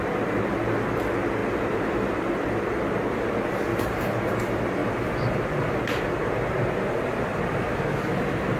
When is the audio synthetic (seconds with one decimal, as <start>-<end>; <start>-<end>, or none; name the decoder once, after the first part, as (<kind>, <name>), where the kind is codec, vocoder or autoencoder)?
1.4-2.2 (vocoder, BigVGAN v2); 3.7-4.3; 4.8-7.8